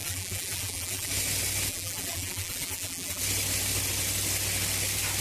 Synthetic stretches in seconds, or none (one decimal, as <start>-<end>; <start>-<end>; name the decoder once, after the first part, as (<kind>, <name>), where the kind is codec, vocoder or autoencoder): 0.0-1.1 (vocoder, BigVGAN v2); 1.7-3.2